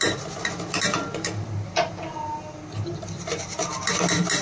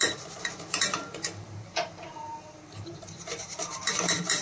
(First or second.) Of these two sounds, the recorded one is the first